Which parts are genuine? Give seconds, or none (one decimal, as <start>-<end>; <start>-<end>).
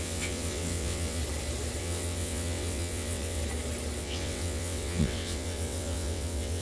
1.2-1.8; 3.4-4.0